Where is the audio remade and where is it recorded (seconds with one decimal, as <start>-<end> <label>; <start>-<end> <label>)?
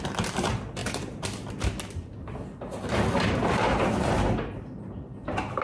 0.0-5.6 recorded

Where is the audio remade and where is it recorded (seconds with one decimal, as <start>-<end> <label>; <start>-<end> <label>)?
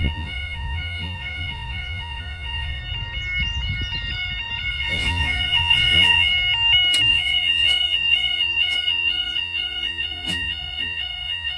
0.0-2.8 remade; 2.8-4.7 recorded; 4.7-6.3 remade; 6.3-7.1 recorded; 7.1-11.6 remade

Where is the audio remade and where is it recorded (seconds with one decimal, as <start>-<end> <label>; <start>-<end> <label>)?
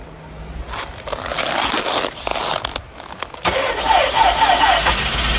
0.0-5.4 recorded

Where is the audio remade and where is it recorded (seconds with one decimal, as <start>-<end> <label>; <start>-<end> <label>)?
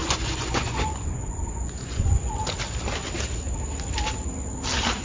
0.0-2.5 remade; 2.5-5.0 recorded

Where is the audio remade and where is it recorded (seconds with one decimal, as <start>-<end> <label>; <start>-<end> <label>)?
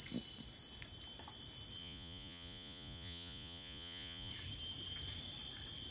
0.0-1.8 recorded; 1.8-4.3 remade; 4.3-5.9 recorded